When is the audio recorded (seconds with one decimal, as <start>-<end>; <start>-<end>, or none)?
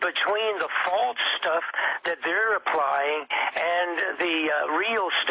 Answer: 0.0-5.3